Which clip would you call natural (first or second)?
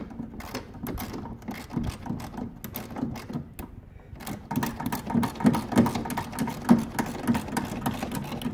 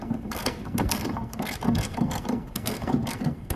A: first